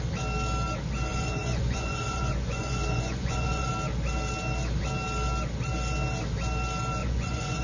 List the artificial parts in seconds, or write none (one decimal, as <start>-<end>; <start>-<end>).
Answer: 1.1-3.7; 7.0-7.6